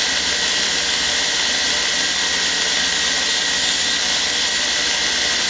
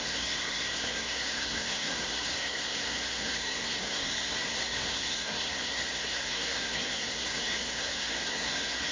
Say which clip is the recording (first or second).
first